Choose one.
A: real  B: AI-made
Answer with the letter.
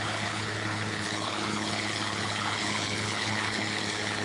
B